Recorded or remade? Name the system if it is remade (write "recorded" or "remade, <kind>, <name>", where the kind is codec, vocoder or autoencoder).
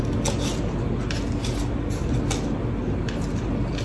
recorded